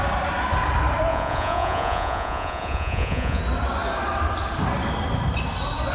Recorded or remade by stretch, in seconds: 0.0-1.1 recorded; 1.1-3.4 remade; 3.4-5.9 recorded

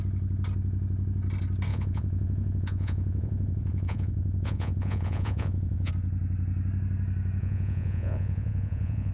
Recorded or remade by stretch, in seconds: 0.0-1.7 recorded; 1.7-5.9 remade; 5.9-7.4 recorded; 7.4-9.1 remade